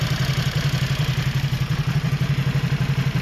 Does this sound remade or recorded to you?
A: recorded